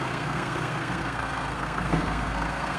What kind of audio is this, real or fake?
fake